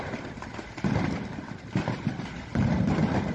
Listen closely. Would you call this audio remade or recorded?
recorded